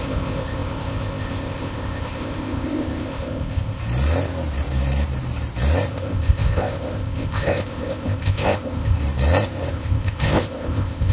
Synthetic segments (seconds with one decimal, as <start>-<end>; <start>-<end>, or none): 0.0-3.8; 5.9-9.0; 9.7-11.1